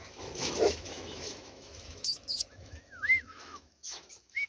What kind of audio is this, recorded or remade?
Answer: remade